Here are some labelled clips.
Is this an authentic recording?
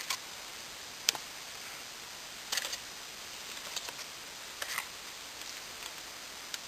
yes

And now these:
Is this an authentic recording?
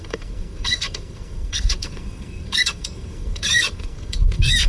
no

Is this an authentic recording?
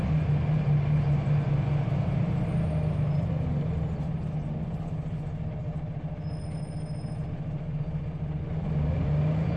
yes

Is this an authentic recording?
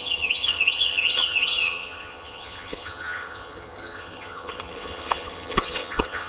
no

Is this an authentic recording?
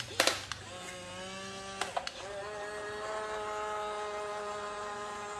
yes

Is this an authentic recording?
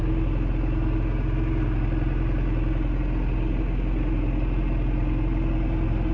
yes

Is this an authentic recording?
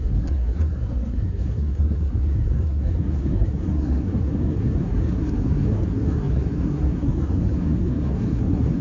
no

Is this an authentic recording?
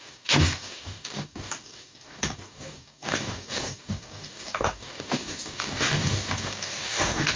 no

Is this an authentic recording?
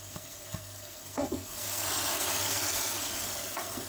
no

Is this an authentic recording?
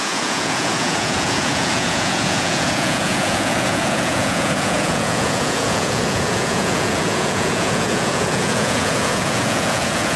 no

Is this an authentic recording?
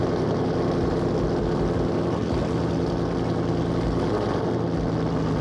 yes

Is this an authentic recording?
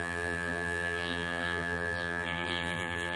no